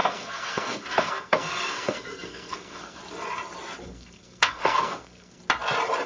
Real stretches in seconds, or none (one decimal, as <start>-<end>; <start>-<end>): 3.0-3.8; 5.4-6.1